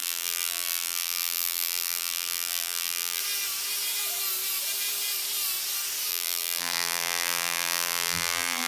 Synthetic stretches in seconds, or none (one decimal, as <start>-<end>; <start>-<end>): 0.0-3.2; 6.1-8.7